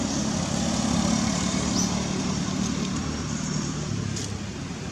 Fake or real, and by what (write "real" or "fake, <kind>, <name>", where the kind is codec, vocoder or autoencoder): fake, vocoder, BigVGAN v2